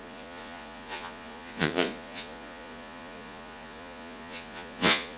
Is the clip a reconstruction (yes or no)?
yes